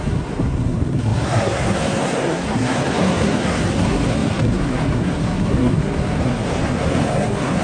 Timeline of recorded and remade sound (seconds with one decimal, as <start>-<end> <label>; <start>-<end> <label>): 0.0-7.6 remade